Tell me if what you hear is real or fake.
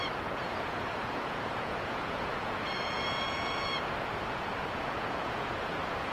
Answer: fake